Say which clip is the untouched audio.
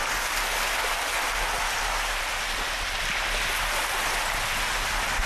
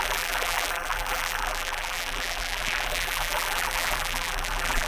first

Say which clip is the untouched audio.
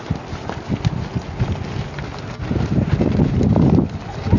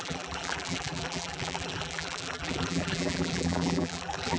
first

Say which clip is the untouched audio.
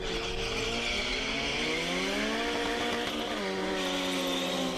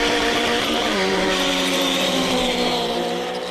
first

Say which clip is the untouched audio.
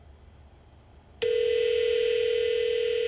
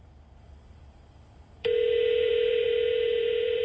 first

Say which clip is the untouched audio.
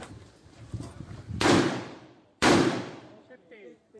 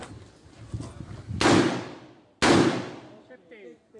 second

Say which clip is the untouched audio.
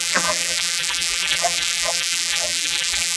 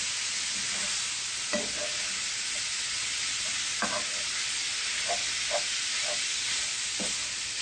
second